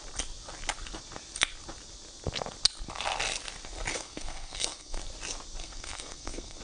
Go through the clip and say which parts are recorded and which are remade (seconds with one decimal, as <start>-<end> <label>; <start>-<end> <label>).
0.0-3.9 recorded; 3.9-5.0 remade; 5.0-5.6 recorded; 5.6-6.6 remade